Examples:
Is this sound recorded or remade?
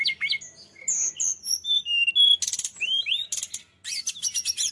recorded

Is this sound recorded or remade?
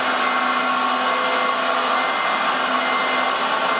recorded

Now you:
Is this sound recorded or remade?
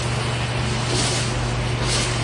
recorded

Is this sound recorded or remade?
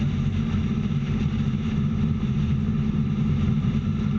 remade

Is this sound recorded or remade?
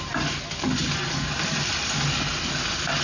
recorded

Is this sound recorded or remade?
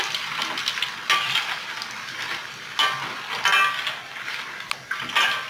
recorded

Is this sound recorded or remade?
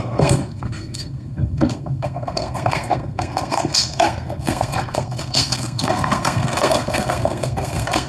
remade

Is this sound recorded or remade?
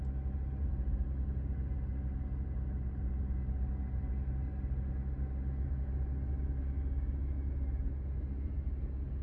recorded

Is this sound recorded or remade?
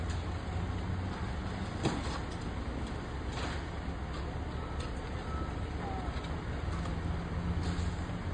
recorded